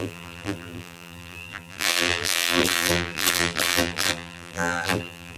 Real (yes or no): no